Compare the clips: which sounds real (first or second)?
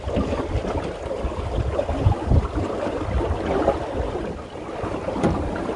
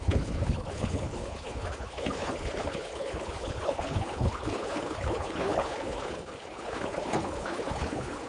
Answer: first